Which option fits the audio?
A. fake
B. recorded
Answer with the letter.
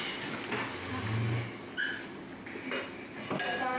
B